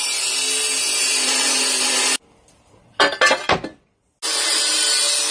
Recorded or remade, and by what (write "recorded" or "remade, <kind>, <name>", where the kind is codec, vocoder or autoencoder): recorded